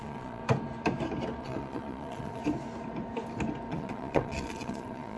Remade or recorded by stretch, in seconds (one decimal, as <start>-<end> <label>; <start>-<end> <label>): 0.0-0.4 remade; 0.4-1.4 recorded; 1.4-2.4 remade; 2.4-3.7 recorded; 3.7-5.2 remade